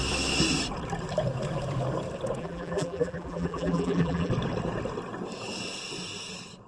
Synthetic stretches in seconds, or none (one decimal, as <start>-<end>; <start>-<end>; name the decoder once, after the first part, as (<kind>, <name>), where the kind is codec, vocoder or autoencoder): 2.4-4.3 (vocoder, BigVGAN v2)